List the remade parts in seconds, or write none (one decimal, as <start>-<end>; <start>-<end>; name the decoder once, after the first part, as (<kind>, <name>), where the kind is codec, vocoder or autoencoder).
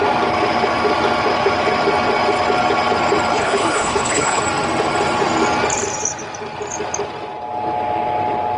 3.3-4.4 (codec, HILCodec)